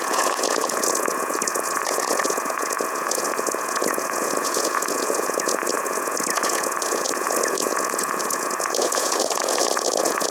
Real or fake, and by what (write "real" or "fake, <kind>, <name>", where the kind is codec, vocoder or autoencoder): fake, vocoder, Vocos